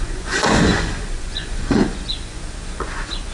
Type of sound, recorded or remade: remade